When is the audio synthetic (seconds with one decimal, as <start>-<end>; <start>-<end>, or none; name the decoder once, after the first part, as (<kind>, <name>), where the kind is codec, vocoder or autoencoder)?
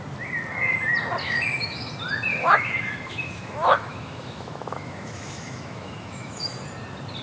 1.2-1.9 (autoencoder, DAC-VAE); 2.3-6.6